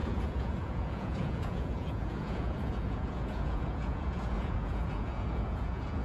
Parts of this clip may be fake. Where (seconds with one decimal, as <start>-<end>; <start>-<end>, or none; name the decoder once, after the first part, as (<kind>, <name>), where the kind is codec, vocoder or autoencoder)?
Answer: 0.0-6.0 (vocoder, Vocos)